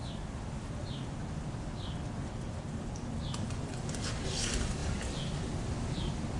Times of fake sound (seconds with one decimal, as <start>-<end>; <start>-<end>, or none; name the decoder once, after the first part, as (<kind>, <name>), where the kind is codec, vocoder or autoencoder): none